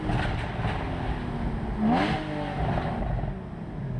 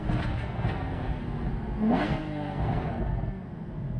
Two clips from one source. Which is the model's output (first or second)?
second